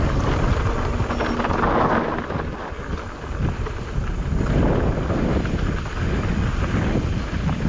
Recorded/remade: recorded